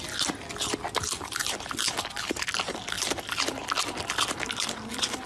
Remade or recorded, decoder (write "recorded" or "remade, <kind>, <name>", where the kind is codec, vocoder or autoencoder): recorded